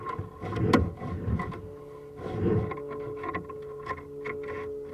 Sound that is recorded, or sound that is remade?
recorded